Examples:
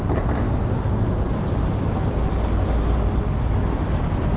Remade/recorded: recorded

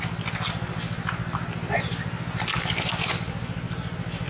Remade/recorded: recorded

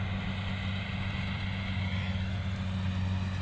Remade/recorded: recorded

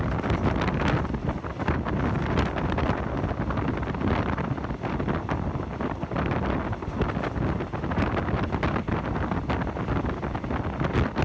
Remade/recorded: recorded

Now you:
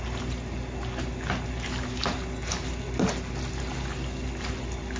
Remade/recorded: recorded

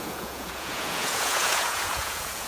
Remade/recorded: remade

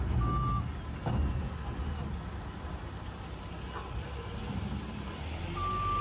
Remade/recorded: recorded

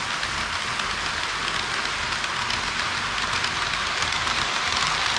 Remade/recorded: recorded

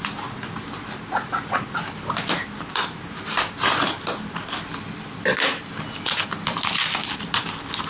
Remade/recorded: recorded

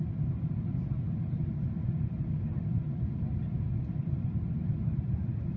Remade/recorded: recorded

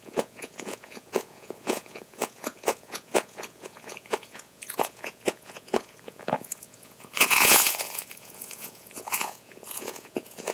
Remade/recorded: remade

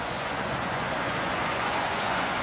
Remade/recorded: remade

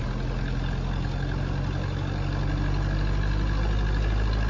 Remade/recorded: recorded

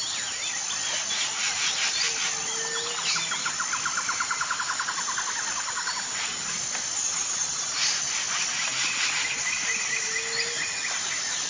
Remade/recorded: recorded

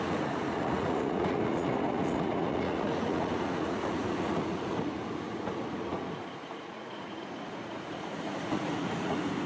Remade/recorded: remade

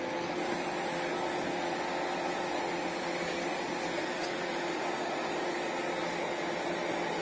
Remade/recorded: recorded